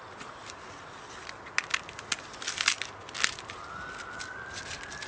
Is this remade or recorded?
recorded